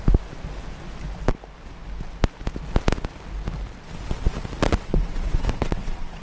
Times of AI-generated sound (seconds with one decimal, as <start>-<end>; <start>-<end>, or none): 4.7-6.2